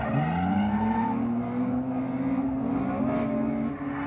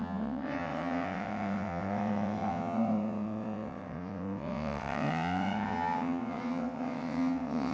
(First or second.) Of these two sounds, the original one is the first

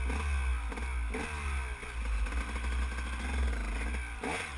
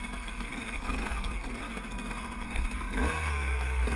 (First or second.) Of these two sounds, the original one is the first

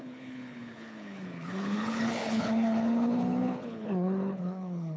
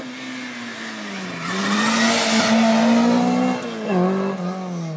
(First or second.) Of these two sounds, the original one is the second